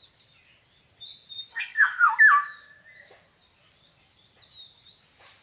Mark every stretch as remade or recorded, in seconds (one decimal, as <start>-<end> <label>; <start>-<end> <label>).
0.0-1.5 recorded; 1.5-2.1 remade; 2.1-5.4 recorded